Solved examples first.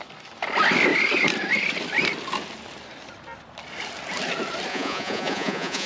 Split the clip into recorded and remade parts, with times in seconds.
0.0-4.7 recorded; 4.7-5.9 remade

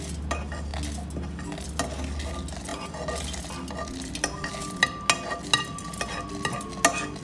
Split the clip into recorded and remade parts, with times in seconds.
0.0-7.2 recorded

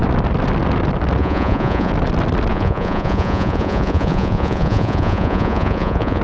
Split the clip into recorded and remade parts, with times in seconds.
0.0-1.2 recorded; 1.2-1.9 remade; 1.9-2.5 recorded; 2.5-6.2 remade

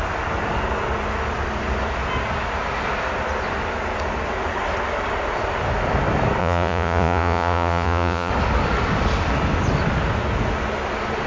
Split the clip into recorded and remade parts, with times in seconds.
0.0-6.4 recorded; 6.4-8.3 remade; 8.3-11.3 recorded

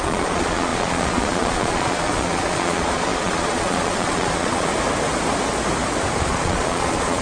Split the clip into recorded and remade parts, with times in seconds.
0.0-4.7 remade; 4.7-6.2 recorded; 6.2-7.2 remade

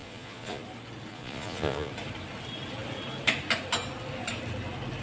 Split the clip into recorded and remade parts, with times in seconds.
0.0-0.6 remade; 0.6-1.1 recorded; 1.1-1.9 remade; 1.9-5.0 recorded